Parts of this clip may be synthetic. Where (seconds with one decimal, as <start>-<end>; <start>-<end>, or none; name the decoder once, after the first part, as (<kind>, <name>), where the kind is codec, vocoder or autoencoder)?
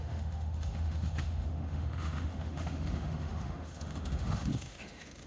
0.0-5.3 (autoencoder, DAC-VAE)